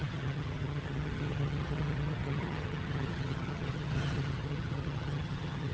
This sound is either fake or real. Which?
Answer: fake